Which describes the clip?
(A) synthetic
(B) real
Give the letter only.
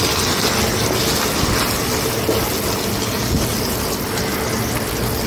B